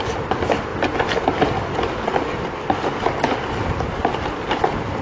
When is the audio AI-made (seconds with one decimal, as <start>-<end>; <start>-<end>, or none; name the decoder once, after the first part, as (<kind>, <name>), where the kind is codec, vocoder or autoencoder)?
none